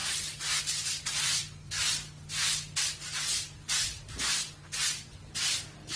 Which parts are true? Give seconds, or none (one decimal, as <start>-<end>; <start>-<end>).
0.0-6.0